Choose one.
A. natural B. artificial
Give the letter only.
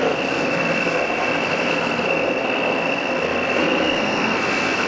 B